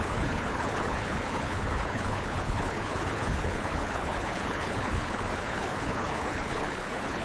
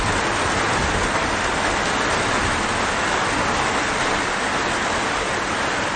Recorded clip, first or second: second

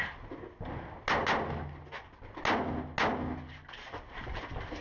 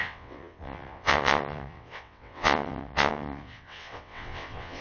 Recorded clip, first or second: first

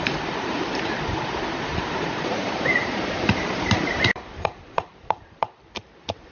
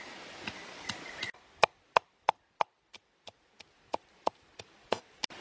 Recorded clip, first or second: second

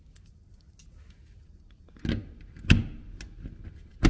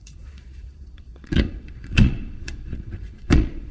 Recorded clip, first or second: first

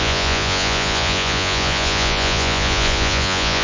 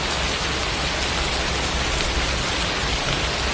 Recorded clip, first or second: second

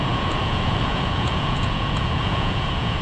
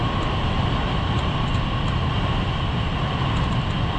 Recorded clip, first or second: second